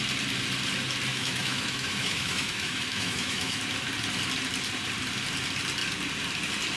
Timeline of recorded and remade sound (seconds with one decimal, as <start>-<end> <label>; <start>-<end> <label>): 0.0-1.1 recorded; 1.1-3.6 remade; 3.6-6.8 recorded